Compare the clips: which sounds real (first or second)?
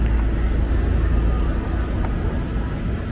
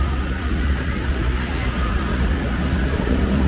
first